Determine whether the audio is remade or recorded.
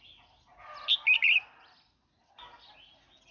recorded